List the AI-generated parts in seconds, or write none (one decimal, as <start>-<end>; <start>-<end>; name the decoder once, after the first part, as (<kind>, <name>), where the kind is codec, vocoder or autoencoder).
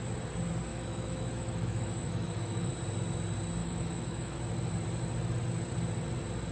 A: 0.7-2.7 (autoencoder, DAC-VAE); 3.6-4.4